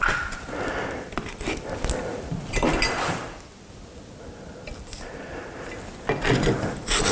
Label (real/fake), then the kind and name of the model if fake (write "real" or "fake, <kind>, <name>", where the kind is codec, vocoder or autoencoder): real